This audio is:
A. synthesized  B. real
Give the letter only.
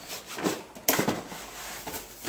B